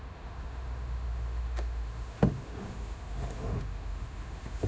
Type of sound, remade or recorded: remade